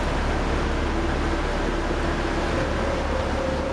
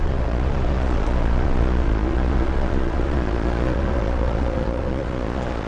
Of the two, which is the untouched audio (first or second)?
first